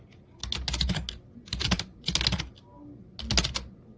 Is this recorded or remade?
recorded